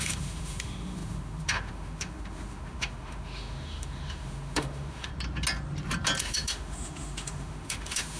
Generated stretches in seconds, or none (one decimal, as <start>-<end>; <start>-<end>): 0.0-5.1; 6.2-8.2